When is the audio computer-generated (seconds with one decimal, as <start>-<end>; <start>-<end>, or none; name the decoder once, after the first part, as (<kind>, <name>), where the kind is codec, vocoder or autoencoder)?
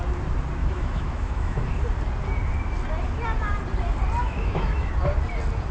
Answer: 0.6-1.7 (autoencoder, DAC-VAE); 4.2-4.9